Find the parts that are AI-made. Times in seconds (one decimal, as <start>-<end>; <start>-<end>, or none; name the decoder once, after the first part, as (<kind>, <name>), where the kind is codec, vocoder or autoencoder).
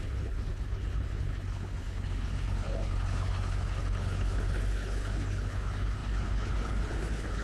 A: 0.0-7.4 (codec, HILCodec)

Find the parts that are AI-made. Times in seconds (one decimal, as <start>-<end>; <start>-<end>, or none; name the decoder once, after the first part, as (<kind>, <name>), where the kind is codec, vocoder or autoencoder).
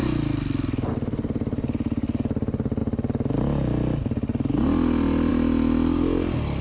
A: none